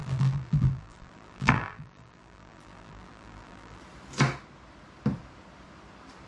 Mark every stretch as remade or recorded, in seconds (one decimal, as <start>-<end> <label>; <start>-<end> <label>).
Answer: 0.0-3.8 remade; 3.8-6.3 recorded